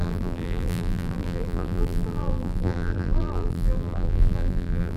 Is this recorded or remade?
remade